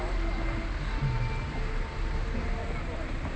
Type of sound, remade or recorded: recorded